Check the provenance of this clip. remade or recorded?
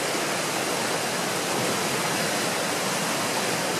recorded